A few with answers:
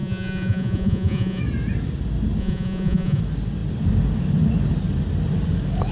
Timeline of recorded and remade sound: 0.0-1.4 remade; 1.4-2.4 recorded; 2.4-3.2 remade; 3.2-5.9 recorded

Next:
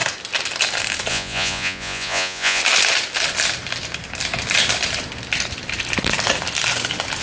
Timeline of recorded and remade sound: 0.0-1.1 recorded; 1.1-2.6 remade; 2.6-7.2 recorded